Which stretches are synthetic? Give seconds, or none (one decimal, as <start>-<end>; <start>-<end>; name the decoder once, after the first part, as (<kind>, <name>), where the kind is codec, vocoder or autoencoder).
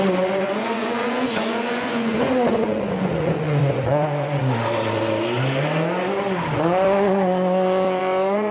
0.0-4.4 (vocoder, Vocos); 8.0-8.5